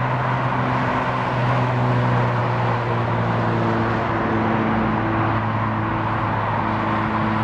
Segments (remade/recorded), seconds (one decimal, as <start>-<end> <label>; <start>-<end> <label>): 0.0-1.4 recorded; 1.4-1.9 remade; 1.9-7.4 recorded